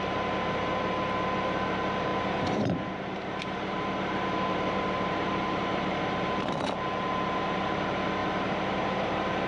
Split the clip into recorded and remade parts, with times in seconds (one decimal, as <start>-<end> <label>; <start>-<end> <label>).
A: 0.0-2.1 recorded; 2.1-6.5 remade; 6.5-8.2 recorded; 8.2-9.5 remade